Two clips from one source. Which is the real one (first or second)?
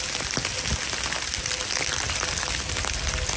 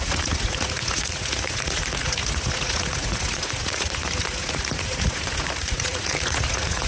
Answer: first